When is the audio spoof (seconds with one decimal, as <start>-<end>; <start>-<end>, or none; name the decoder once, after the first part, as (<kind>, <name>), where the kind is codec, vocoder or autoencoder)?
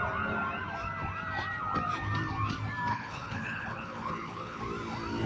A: 2.9-4.6 (codec, HILCodec)